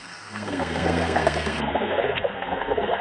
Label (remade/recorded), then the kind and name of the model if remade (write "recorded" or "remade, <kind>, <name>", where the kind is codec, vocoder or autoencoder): remade, codec, SNAC